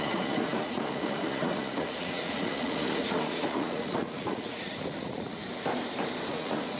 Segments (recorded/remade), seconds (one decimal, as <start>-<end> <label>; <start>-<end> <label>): 0.0-5.4 remade; 5.4-6.3 recorded; 6.3-6.8 remade